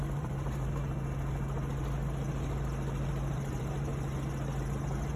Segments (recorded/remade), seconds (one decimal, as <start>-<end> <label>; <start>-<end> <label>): 0.0-0.8 remade; 0.8-3.3 recorded; 3.3-3.9 remade; 3.9-4.6 recorded; 4.6-5.2 remade